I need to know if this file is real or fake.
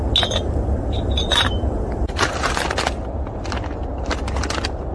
real